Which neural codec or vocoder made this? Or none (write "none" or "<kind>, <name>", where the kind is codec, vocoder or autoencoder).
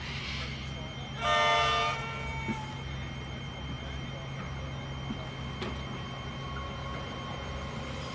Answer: none